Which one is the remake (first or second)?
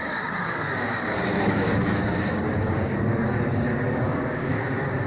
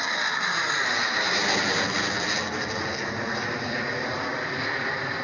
first